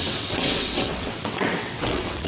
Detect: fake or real fake